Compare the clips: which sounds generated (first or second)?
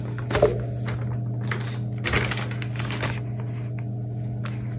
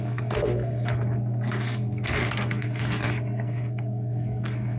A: second